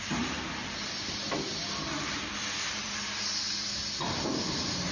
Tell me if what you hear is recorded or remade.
recorded